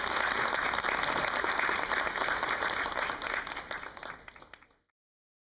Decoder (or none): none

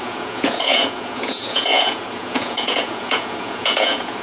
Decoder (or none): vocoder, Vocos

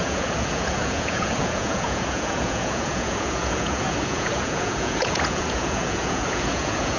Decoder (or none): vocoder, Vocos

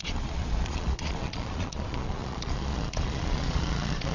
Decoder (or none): vocoder, Vocos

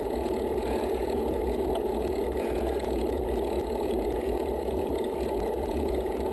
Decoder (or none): vocoder, Vocos